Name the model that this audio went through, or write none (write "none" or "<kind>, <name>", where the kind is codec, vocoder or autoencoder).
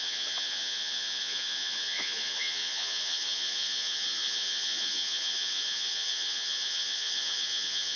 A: vocoder, Vocos